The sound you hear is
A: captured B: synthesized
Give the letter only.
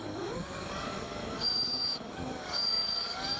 B